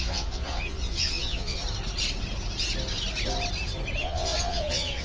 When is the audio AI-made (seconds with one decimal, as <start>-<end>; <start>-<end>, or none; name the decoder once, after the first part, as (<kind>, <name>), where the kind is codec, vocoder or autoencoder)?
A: 0.0-1.6 (vocoder, Vocos); 4.0-5.0